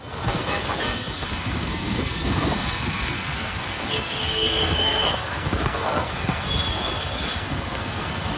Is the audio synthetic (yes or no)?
yes